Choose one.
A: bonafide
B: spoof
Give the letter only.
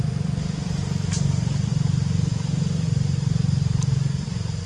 B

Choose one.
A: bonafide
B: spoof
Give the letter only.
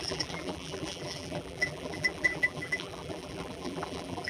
B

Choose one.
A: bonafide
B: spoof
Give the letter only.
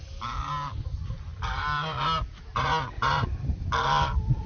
A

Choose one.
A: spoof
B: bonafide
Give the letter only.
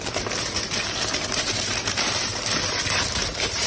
A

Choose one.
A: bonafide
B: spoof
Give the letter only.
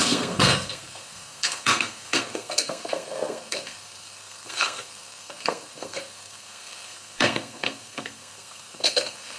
B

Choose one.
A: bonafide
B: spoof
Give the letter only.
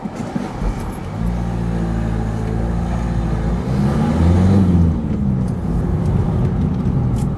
A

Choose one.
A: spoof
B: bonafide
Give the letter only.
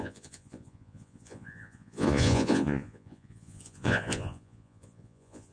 A